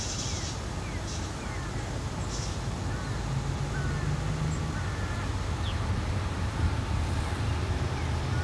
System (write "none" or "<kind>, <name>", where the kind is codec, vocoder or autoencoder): none